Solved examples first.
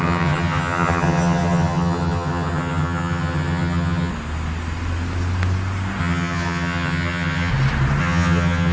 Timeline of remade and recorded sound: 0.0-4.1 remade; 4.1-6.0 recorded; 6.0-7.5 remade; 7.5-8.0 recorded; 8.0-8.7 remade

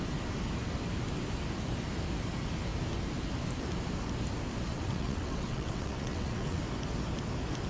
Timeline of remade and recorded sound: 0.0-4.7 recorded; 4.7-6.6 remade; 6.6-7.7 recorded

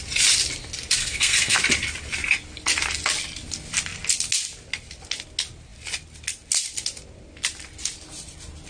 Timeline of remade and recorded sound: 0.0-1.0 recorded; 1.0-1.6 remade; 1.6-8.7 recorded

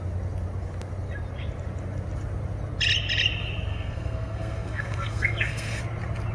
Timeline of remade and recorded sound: 0.0-3.7 recorded; 3.7-5.8 remade; 5.8-6.3 recorded

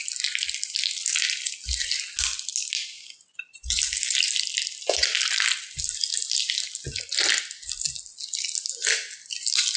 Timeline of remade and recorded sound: 0.0-9.8 recorded

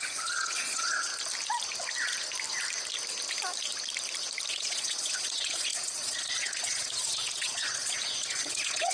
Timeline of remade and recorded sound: 0.0-1.1 remade; 1.1-4.5 recorded; 4.5-8.9 remade